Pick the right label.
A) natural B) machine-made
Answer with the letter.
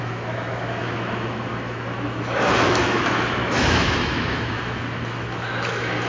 B